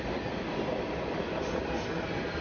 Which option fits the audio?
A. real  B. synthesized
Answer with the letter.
A